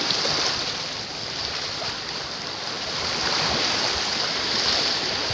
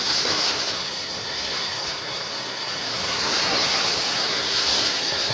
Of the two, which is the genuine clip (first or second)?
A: first